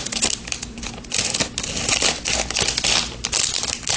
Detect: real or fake real